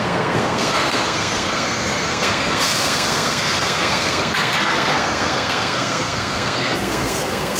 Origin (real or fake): fake